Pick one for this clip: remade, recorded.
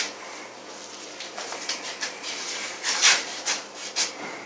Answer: remade